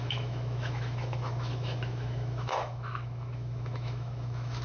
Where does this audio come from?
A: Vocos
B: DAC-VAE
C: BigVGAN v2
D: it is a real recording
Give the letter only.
B